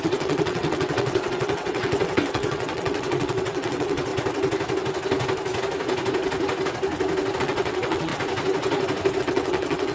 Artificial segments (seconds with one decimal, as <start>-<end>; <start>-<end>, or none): 0.0-4.1; 7.4-8.1; 9.2-9.9